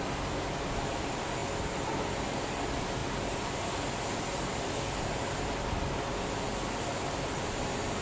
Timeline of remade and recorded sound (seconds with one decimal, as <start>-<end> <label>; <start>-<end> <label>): 0.0-8.0 recorded